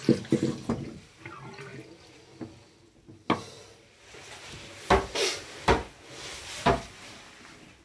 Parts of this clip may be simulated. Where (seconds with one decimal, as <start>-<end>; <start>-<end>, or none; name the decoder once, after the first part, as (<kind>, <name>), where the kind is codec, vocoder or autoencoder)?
none